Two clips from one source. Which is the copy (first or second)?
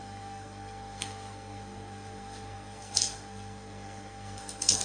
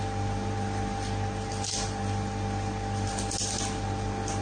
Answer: first